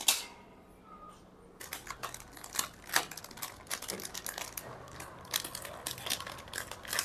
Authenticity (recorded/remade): recorded